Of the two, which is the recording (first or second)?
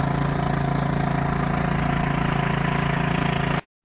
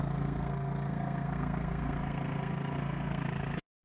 first